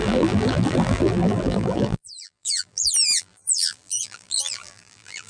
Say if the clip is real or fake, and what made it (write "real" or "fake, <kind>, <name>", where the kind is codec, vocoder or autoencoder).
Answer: fake, vocoder, BigVGAN v2